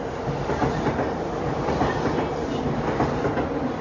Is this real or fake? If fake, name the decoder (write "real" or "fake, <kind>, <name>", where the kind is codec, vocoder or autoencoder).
real